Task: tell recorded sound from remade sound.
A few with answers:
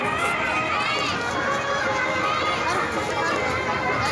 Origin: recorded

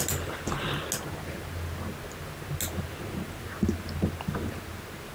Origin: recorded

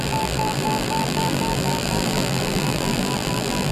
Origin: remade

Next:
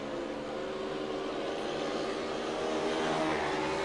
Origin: recorded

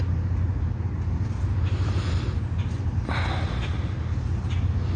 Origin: recorded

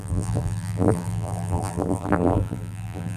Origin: remade